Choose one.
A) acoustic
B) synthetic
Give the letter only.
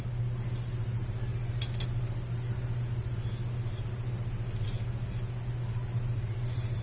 A